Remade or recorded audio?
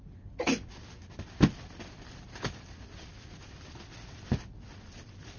recorded